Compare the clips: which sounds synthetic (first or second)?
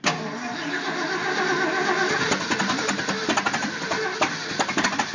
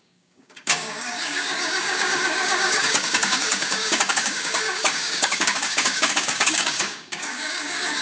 second